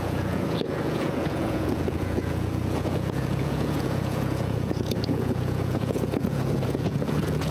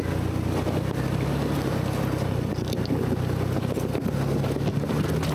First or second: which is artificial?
first